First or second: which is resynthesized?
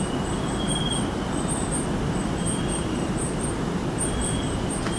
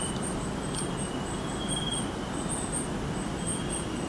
first